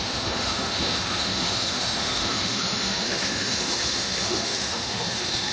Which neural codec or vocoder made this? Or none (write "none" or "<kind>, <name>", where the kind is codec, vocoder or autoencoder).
autoencoder, DAC-VAE